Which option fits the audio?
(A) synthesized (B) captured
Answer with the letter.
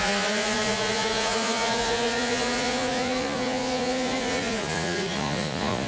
A